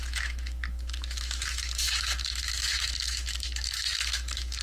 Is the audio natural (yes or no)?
no